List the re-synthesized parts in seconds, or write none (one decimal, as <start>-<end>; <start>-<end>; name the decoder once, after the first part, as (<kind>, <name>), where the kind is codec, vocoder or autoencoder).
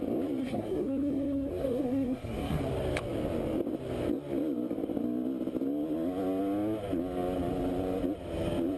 0.4-2.6 (codec, SNAC)